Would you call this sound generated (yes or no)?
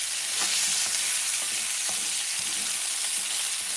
no